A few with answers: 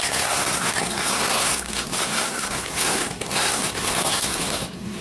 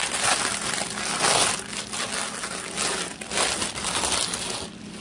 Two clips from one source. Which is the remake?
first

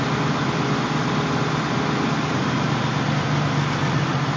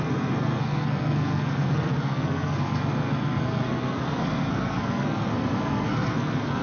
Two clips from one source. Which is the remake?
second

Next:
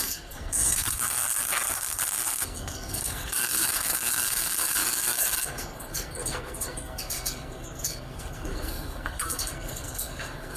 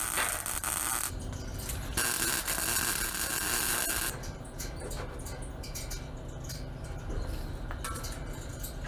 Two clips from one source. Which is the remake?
first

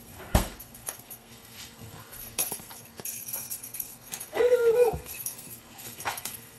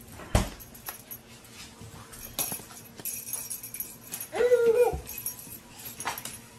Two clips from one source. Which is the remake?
first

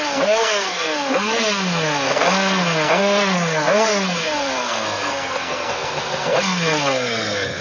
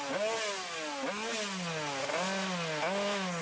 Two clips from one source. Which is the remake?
first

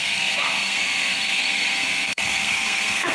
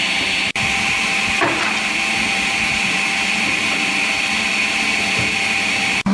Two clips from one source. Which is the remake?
first